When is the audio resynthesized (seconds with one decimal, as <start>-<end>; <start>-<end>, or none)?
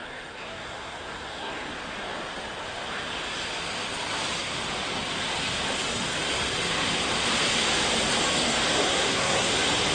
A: 0.0-1.7; 8.8-9.5